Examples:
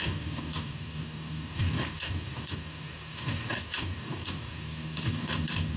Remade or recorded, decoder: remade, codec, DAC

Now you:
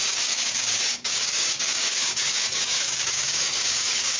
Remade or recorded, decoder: remade, codec, DAC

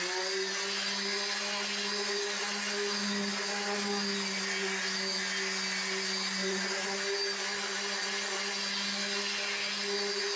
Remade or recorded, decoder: recorded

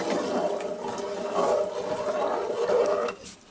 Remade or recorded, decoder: recorded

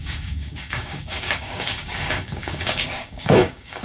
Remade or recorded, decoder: remade, codec, DAC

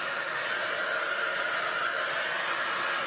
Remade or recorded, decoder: recorded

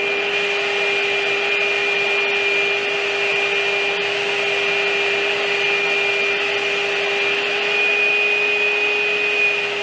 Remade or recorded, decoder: recorded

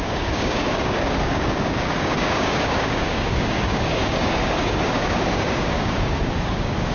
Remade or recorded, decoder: remade, codec, DAC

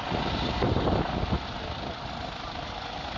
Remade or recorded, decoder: recorded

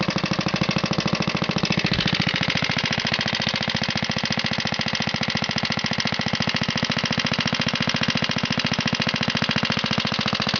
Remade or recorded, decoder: recorded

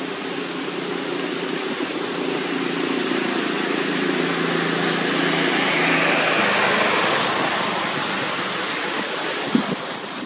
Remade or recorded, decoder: recorded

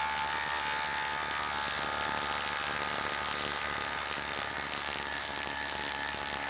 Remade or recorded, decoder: recorded